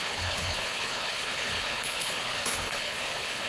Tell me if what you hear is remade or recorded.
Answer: remade